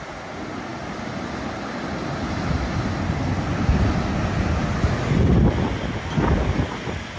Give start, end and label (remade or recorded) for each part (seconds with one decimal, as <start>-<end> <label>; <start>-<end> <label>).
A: 0.0-7.2 recorded